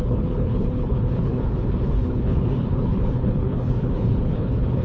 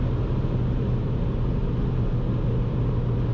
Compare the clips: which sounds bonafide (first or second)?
second